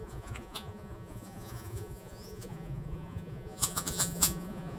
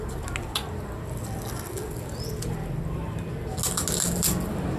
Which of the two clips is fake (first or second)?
first